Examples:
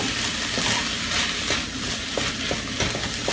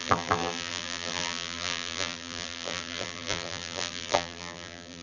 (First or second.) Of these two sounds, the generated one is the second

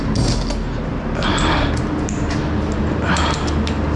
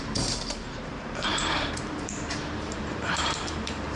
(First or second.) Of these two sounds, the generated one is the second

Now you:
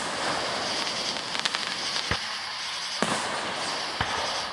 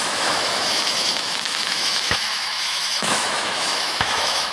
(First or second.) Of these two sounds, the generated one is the second